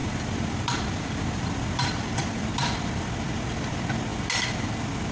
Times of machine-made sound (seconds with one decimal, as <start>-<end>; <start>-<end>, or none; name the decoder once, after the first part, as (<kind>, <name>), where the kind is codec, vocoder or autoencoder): 0.0-3.1 (vocoder, BigVGAN v2)